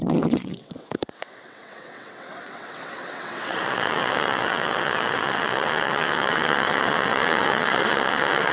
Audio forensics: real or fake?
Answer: fake